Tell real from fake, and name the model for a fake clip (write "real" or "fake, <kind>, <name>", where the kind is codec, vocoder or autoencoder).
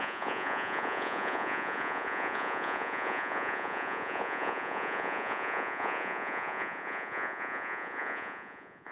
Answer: fake, vocoder, Vocos